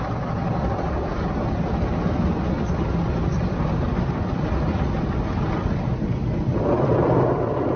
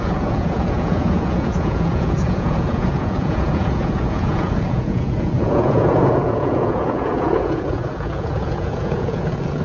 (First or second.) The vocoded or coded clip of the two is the second